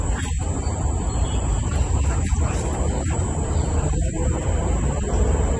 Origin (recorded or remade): remade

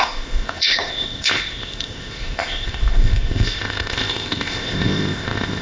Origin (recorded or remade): remade